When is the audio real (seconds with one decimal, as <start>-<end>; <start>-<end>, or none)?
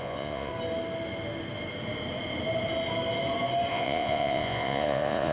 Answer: 0.5-3.7